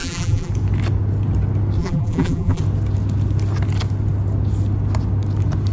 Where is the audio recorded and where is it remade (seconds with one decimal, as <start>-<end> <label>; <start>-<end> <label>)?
0.0-0.5 remade; 0.5-1.8 recorded; 1.8-2.6 remade; 2.6-5.7 recorded